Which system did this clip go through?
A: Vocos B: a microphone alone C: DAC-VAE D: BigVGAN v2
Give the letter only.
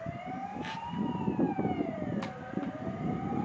B